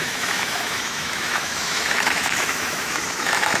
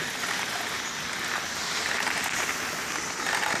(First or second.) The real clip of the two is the second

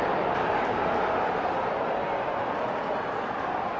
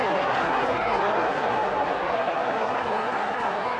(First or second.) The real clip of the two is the first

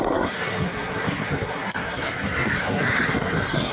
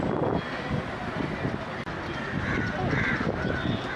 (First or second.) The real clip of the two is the second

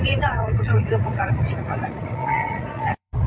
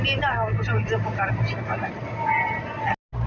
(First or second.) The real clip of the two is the second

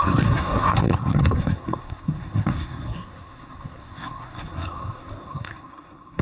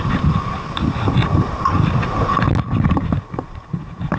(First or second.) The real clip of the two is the second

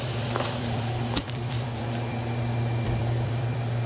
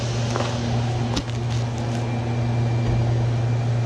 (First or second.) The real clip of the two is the second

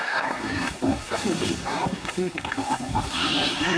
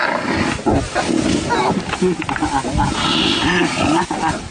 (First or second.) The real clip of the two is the second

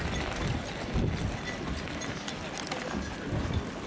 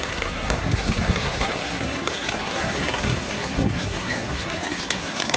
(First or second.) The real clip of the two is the first